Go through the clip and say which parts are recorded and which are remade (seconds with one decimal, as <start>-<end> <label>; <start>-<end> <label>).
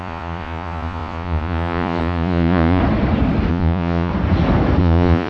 0.0-2.8 remade; 2.8-3.5 recorded; 3.5-4.1 remade; 4.1-4.8 recorded; 4.8-5.3 remade